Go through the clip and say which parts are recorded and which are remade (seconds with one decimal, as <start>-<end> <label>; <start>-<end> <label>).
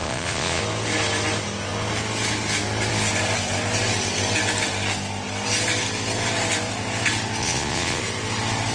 0.0-0.6 remade; 0.6-7.4 recorded; 7.4-8.0 remade; 8.0-8.7 recorded